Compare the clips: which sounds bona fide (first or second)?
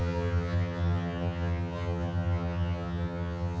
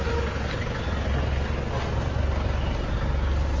second